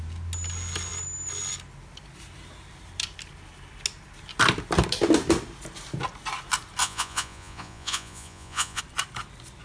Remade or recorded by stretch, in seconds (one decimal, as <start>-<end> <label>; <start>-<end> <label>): 0.0-6.8 recorded; 6.8-8.8 remade; 8.8-9.6 recorded